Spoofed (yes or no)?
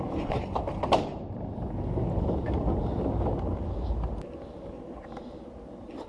no